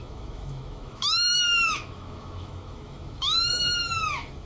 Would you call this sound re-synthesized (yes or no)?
yes